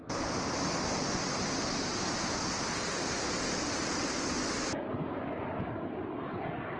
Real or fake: real